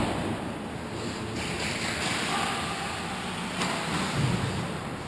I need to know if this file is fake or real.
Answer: real